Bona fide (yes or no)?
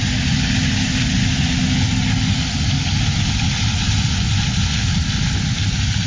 yes